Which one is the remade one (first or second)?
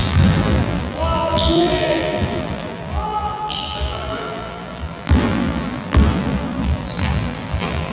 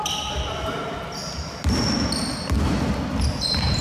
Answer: first